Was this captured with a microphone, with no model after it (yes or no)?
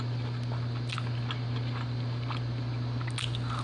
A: yes